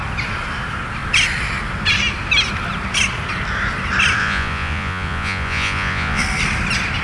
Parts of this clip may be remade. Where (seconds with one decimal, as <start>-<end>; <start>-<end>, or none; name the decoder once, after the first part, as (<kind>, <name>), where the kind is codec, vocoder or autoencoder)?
4.2-6.2 (vocoder, Vocos)